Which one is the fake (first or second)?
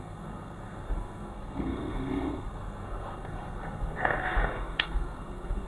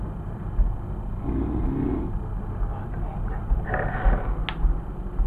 first